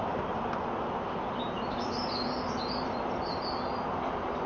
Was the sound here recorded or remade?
recorded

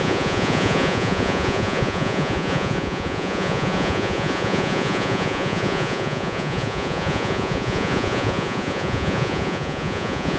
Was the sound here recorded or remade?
remade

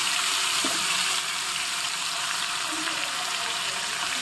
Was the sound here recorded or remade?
remade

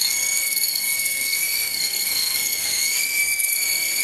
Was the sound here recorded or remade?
remade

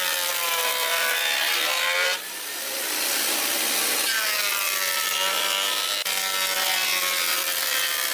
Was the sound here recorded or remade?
recorded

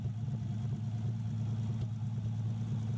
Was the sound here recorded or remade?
recorded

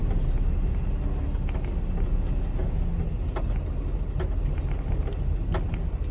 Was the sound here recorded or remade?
recorded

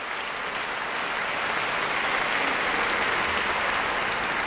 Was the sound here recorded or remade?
recorded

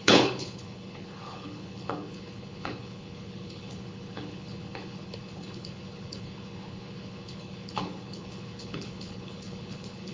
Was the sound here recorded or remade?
remade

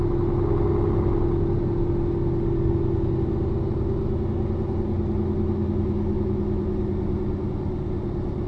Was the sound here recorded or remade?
recorded